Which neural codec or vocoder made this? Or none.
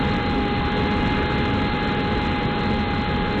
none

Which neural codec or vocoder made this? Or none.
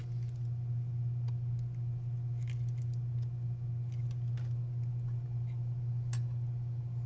none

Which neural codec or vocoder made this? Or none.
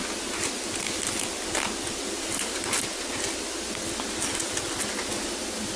none